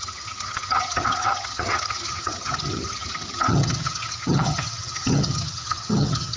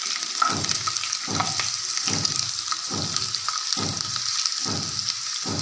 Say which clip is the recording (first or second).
second